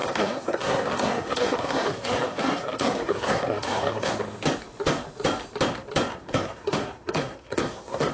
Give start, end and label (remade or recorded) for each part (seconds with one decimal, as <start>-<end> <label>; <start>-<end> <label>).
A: 0.0-4.1 remade; 4.1-6.1 recorded; 6.1-8.1 remade